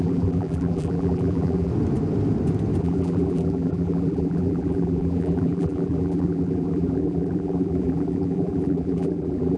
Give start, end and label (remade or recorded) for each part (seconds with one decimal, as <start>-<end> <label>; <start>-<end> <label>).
0.0-1.7 remade; 1.7-2.8 recorded; 2.8-9.6 remade